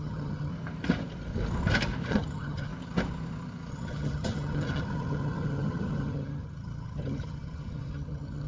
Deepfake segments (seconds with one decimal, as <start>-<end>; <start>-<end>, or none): 0.0-0.5; 2.1-2.7; 3.7-8.5

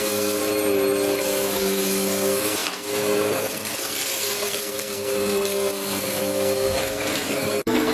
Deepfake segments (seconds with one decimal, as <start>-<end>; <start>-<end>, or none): 0.0-0.4; 1.2-7.9

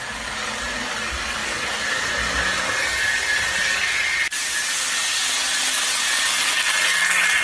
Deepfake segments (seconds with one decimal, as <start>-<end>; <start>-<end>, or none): none

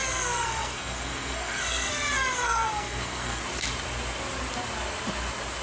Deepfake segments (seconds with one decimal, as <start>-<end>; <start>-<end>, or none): 0.0-3.4

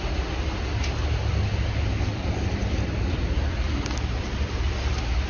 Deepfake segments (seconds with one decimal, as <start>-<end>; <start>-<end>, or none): 2.1-5.3

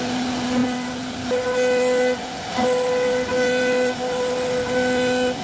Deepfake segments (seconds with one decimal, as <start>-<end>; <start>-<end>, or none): none

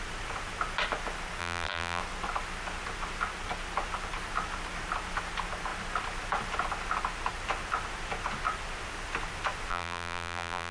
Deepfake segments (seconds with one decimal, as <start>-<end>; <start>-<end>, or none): 1.4-2.0; 9.7-10.7

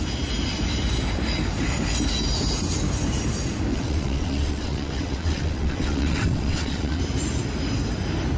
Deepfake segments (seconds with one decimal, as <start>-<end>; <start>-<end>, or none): 3.7-7.0